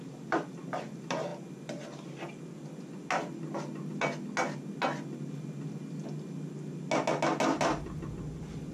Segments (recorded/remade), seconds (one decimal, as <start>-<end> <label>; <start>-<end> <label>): 0.0-8.7 recorded